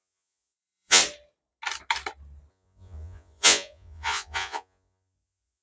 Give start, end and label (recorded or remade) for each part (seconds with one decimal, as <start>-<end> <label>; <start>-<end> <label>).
0.0-1.0 remade; 1.0-2.5 recorded; 2.5-5.6 remade